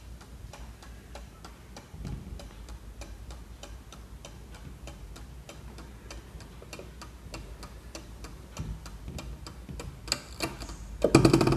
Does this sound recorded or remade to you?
recorded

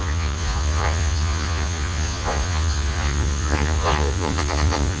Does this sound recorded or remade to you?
remade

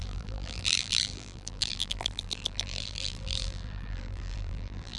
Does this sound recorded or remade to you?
remade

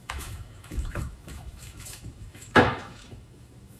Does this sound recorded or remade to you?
remade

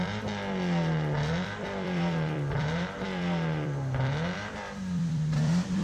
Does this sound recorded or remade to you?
remade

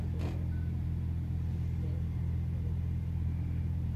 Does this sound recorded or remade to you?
recorded